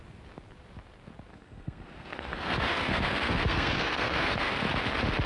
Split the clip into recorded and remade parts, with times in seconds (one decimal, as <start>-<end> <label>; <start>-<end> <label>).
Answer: 0.0-1.3 recorded; 1.3-4.5 remade; 4.5-5.3 recorded